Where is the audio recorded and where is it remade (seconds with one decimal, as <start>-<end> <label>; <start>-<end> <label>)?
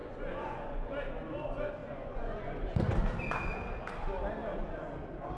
0.0-0.9 remade; 0.9-1.8 recorded; 1.8-2.9 remade; 2.9-5.4 recorded